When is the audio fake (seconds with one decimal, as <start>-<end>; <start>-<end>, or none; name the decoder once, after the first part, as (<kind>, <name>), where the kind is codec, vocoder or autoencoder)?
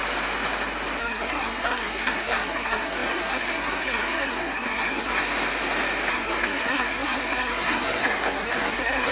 1.0-5.2 (codec, SNAC); 6.1-9.1